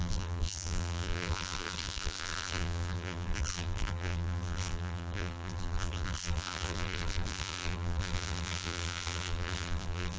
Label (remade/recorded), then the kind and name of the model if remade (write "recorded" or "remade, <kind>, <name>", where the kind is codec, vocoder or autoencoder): remade, vocoder, BigVGAN v2